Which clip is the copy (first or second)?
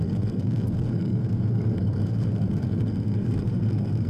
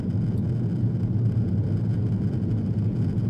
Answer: first